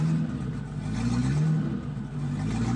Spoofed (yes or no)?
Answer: no